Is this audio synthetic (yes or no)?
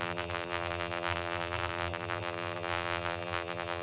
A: yes